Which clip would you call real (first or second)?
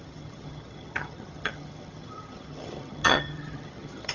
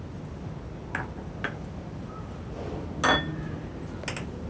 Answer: second